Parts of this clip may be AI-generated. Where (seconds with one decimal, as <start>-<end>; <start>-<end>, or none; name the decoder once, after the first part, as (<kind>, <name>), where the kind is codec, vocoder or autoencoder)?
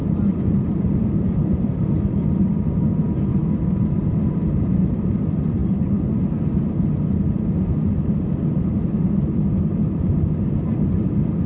none